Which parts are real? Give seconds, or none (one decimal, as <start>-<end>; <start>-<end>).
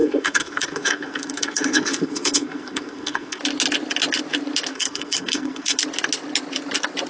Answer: 3.4-4.7; 5.8-7.1